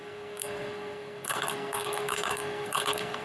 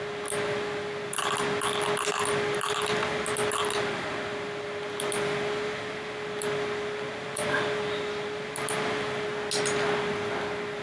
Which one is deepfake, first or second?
first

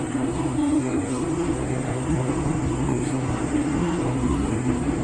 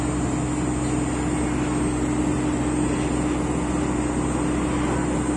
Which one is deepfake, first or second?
first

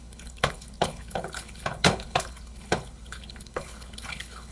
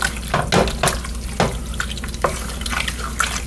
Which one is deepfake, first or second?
first